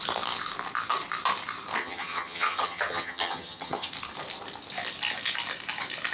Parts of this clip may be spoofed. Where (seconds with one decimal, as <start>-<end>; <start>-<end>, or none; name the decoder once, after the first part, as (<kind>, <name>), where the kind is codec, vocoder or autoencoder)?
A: 1.8-3.9 (vocoder, HiFi-GAN)